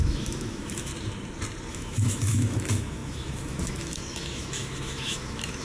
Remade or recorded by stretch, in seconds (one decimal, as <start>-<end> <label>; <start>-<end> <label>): 0.0-0.9 remade; 0.9-1.7 recorded; 1.7-5.6 remade